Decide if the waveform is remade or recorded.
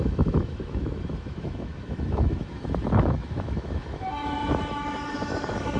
remade